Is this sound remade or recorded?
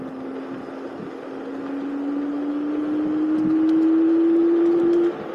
recorded